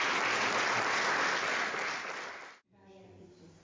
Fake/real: real